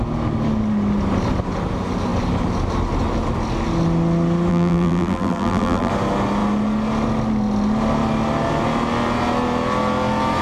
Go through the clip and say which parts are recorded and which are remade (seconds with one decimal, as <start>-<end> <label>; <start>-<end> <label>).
0.0-4.5 recorded; 4.5-5.9 remade; 5.9-10.4 recorded